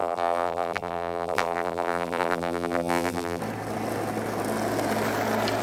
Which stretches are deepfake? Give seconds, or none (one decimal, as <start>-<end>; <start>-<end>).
0.0-3.4